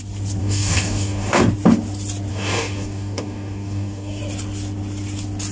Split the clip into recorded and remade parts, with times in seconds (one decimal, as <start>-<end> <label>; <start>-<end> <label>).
0.0-0.4 recorded; 0.4-1.4 remade; 1.4-2.3 recorded; 2.3-4.2 remade; 4.2-5.5 recorded